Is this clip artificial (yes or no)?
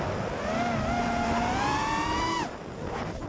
no